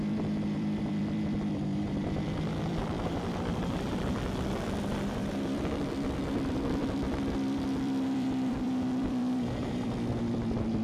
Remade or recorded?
remade